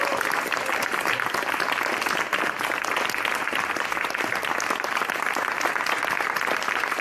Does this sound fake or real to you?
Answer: real